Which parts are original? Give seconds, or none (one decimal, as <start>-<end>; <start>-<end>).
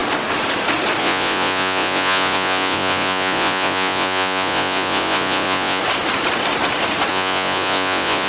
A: 0.0-1.0; 5.8-7.1